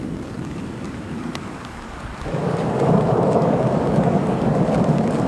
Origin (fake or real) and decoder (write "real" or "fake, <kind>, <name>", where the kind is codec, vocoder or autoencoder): fake, codec, DAC